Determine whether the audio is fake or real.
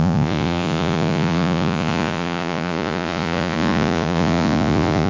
fake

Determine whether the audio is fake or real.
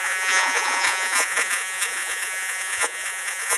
fake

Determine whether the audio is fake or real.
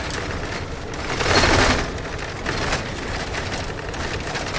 real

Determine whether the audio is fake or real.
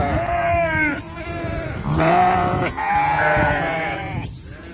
fake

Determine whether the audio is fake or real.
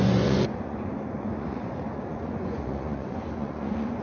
fake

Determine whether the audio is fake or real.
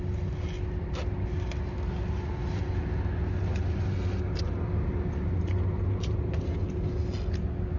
real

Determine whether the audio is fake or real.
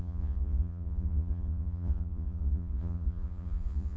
fake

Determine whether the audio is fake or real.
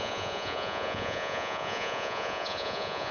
fake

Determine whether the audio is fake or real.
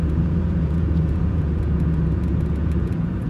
fake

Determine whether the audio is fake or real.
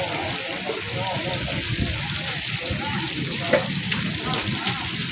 real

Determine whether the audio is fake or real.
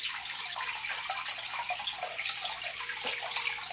real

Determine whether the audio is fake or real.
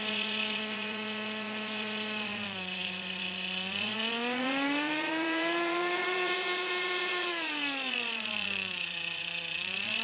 fake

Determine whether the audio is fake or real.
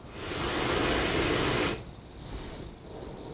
real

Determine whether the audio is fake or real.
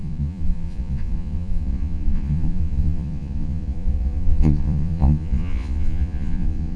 fake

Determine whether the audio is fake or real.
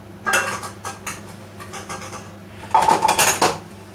real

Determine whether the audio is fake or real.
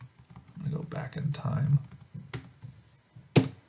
real